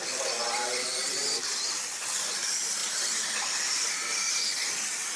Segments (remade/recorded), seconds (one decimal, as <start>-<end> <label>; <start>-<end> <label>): 0.0-5.2 recorded